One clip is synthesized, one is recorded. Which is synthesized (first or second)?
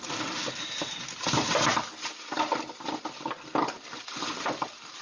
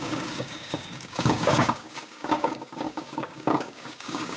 second